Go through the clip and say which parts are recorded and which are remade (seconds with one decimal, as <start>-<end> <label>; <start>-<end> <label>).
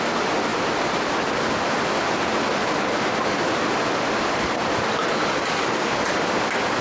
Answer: 0.0-6.8 recorded